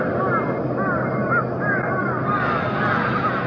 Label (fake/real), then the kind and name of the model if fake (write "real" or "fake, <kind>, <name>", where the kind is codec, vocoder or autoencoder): real